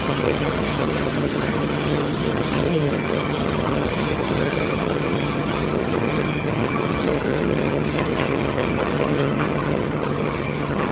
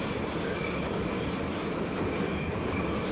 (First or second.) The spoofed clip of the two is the first